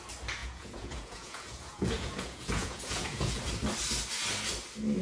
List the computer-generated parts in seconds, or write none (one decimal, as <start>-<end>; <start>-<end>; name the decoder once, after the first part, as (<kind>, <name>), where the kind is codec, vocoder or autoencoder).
0.4-3.4 (vocoder, Vocos)